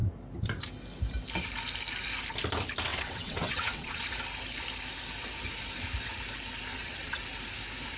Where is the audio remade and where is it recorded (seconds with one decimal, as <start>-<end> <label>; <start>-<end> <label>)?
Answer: 0.0-2.9 recorded; 2.9-4.0 remade; 4.0-6.7 recorded; 6.7-7.2 remade; 7.2-8.0 recorded